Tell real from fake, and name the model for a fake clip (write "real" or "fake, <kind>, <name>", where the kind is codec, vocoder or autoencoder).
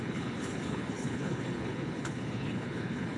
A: fake, codec, HILCodec